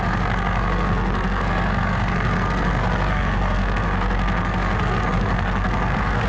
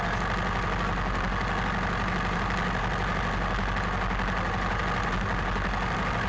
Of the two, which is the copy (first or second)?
first